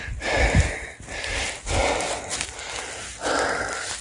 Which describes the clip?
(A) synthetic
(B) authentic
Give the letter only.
B